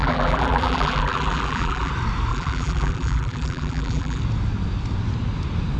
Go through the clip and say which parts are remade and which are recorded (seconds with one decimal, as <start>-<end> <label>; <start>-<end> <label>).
0.0-1.9 remade; 1.9-2.3 recorded; 2.3-4.2 remade; 4.2-5.8 recorded